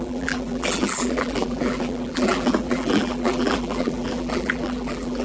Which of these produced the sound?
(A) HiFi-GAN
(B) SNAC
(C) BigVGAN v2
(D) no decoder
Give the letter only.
C